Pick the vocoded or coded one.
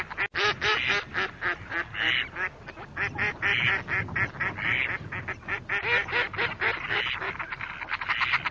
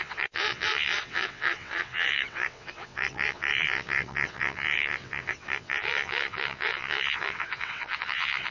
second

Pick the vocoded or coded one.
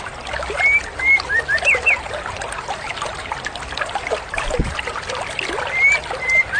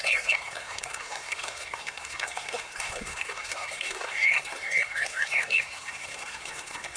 second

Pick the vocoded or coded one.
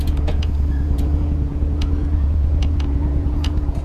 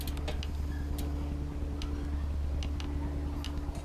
first